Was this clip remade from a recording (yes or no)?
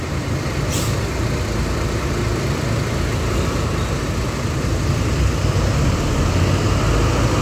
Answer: no